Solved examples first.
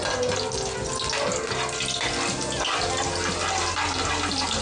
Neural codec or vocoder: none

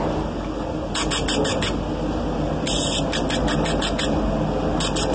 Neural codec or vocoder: none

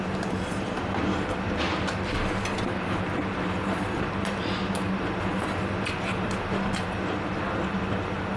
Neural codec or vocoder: none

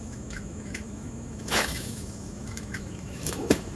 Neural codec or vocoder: autoencoder, DAC-VAE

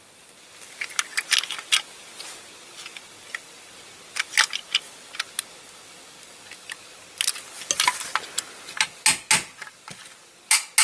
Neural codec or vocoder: none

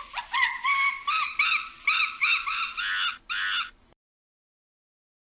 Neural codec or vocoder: none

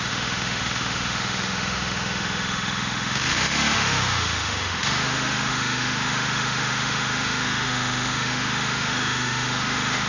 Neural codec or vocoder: autoencoder, DAC-VAE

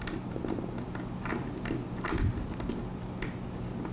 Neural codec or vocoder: none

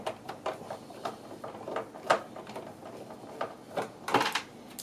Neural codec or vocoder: none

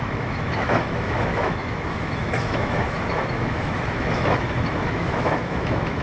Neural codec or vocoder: autoencoder, DAC-VAE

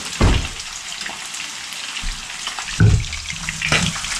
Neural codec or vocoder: none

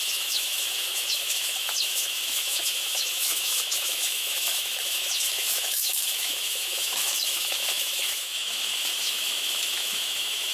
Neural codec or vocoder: autoencoder, DAC-VAE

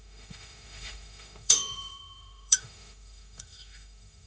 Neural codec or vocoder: autoencoder, DAC-VAE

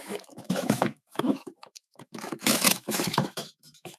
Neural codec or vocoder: autoencoder, DAC-VAE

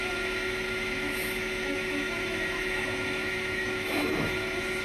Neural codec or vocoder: autoencoder, DAC-VAE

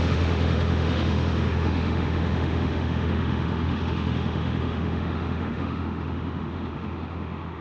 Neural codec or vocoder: autoencoder, DAC-VAE